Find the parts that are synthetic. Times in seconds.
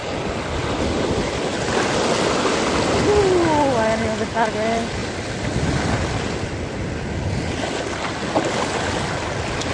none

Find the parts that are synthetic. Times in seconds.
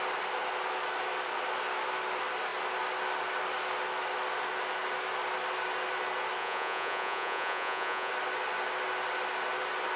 6.4-8.1 (vocoder, Vocos)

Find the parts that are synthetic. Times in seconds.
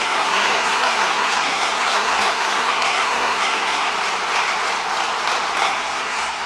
0.0-3.9 (codec, SNAC); 5.6-6.5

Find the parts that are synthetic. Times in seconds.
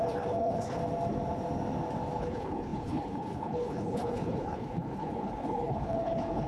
0.0-0.8 (codec, HILCodec); 2.2-6.5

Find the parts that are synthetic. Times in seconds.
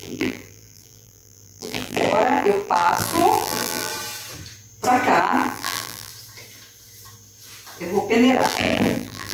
0.0-3.9 (vocoder, BigVGAN v2); 5.2-6.1; 8.3-9.3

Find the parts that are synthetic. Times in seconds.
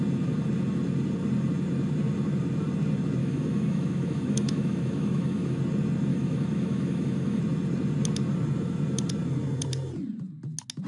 3.2-5.6 (autoencoder, DAC-VAE); 6.1-7.4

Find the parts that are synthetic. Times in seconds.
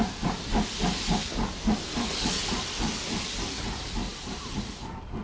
0.0-0.5 (vocoder, BigVGAN v2); 3.6-5.2